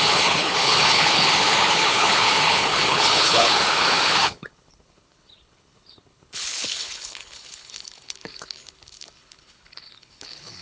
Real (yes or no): no